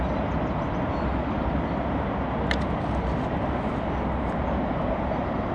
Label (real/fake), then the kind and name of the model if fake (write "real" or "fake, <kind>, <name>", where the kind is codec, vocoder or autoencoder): real